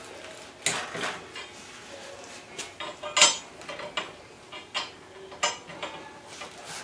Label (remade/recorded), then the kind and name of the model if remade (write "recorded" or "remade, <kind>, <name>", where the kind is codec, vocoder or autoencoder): recorded